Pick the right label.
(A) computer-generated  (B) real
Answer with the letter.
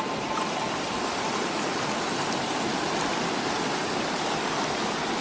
B